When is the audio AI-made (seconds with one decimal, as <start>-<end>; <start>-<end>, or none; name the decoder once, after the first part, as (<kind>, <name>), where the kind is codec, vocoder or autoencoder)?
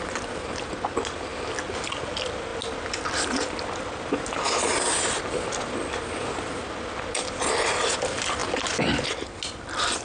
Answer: none